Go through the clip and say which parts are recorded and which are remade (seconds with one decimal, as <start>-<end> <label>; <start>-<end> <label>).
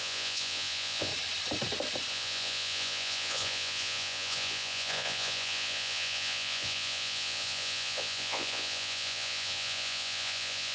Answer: 0.0-1.1 remade; 1.1-2.1 recorded; 2.1-10.7 remade